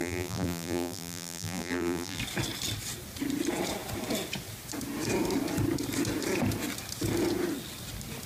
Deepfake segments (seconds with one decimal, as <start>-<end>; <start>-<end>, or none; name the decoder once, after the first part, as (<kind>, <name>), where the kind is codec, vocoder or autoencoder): 0.0-2.2 (vocoder, BigVGAN v2)